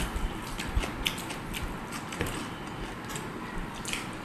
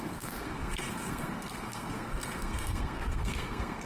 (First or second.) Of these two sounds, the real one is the first